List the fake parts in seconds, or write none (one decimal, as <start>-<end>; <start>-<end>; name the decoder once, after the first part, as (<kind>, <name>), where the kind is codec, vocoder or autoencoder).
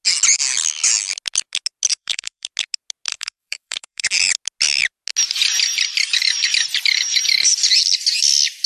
1.9-2.5 (codec, DAC); 3.1-4.1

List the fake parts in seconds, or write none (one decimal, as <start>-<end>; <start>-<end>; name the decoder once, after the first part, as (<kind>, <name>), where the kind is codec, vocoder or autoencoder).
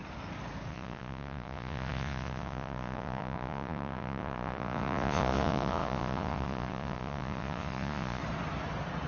0.7-8.2 (vocoder, Vocos)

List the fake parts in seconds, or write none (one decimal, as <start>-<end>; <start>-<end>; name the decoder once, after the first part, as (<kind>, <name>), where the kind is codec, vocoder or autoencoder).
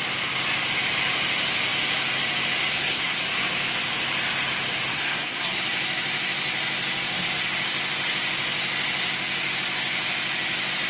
2.6-3.2 (codec, SNAC); 4.9-5.6